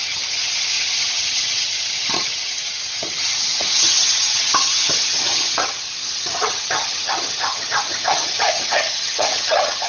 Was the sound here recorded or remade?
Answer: remade